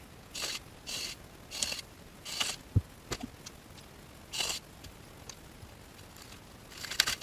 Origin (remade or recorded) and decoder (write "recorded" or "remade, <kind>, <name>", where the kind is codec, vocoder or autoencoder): recorded